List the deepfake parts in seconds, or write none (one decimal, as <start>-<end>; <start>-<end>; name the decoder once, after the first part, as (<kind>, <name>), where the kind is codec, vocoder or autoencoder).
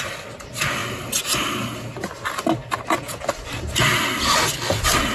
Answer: 2.6-3.5 (vocoder, BigVGAN v2)